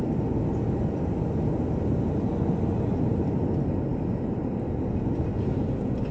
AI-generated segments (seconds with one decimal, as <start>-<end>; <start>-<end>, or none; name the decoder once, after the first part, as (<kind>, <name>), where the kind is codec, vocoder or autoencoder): none